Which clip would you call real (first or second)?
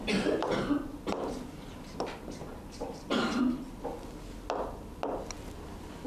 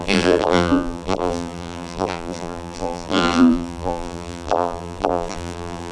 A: first